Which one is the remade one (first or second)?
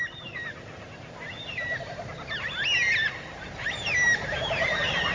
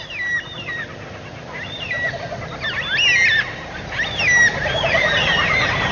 first